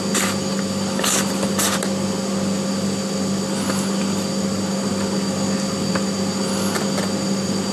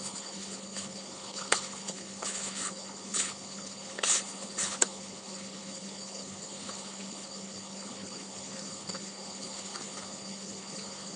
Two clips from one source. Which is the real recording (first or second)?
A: first